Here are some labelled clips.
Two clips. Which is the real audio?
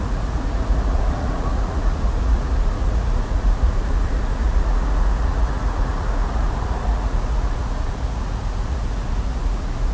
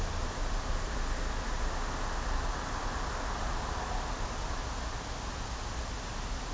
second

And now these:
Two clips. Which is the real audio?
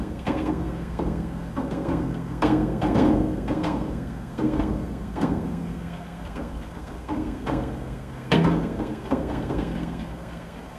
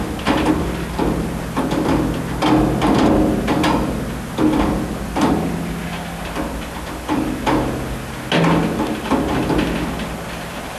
second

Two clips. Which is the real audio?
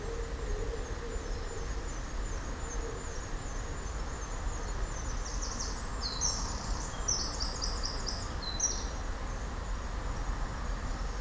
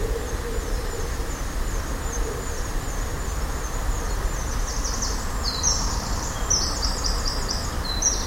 first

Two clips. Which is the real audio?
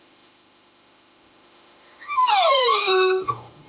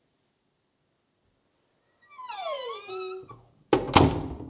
second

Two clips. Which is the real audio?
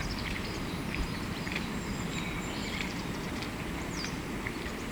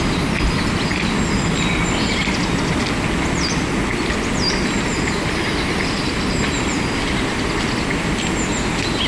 second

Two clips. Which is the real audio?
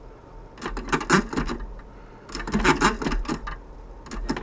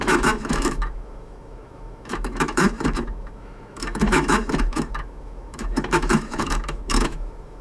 first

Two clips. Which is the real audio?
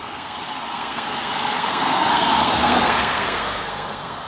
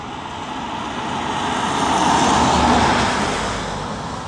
second